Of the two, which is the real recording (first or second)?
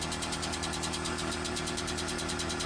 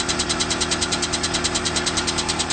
first